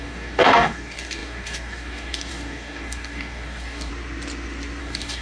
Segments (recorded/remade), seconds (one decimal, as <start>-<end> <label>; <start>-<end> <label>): 0.0-3.9 remade; 3.9-4.8 recorded; 4.8-5.2 remade